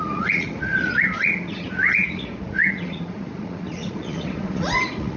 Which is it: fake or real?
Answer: fake